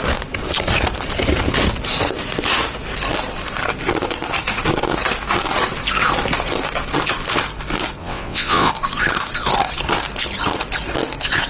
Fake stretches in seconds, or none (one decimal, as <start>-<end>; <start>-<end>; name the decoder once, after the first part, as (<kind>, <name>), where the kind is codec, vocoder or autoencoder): 8.0-8.7 (vocoder, WaveNeXt)